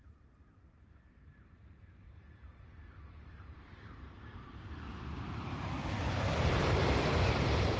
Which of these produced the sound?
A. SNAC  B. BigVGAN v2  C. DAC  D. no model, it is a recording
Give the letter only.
B